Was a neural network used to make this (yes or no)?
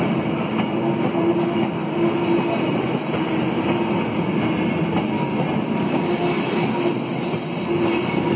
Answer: no